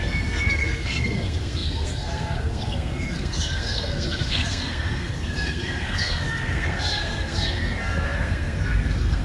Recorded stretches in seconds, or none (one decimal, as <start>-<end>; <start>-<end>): none